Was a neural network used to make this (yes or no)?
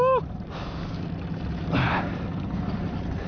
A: no